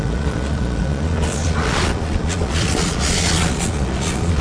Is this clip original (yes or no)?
no